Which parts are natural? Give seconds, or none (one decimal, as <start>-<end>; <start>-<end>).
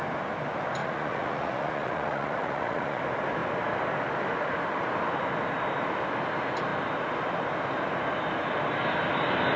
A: 0.0-0.8; 3.0-9.6